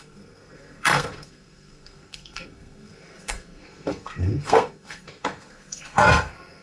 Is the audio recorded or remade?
remade